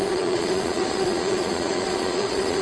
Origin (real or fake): fake